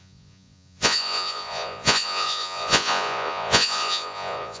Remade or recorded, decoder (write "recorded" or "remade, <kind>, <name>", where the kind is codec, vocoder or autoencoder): remade, vocoder, Vocos